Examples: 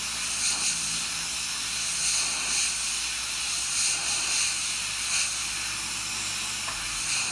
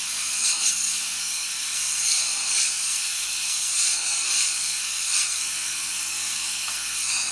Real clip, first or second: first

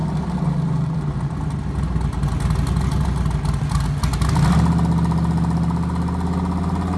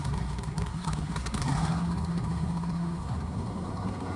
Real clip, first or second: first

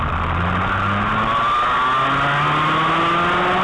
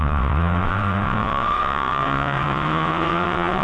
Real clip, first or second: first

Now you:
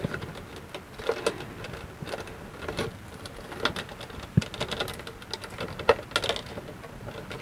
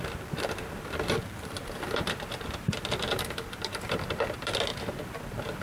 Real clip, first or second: first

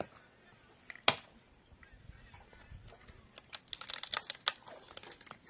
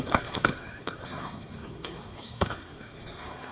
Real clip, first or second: first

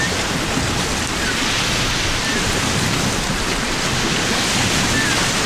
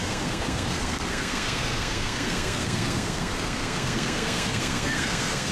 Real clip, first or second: first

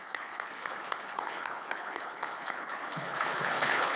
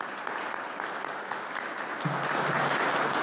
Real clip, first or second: second